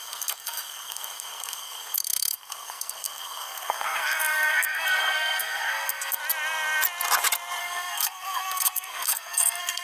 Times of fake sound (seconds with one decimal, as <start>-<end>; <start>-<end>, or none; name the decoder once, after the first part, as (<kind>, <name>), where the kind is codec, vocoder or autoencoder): 0.0-6.2 (codec, SNAC); 7.6-9.8